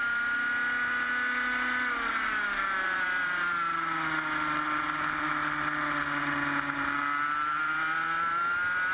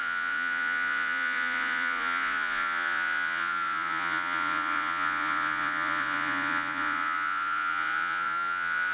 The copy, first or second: second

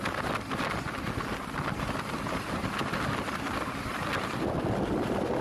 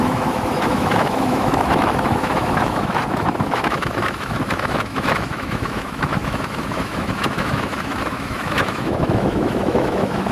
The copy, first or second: second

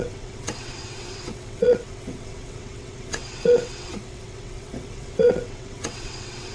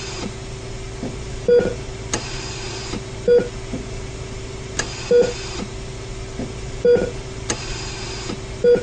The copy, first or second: first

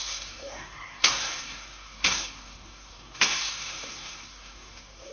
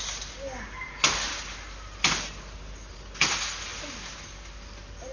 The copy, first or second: first